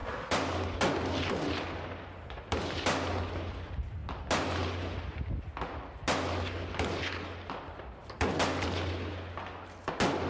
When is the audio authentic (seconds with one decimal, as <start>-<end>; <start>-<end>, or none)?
0.0-10.3

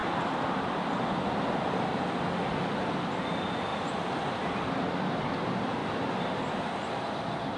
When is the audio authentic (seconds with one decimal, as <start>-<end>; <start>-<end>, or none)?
0.0-3.7; 4.6-5.8; 6.9-7.6

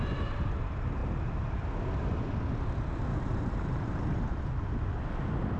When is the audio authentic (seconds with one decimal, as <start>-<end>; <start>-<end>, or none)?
0.0-3.1; 4.0-5.6